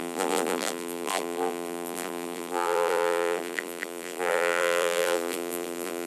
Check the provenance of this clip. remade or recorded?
remade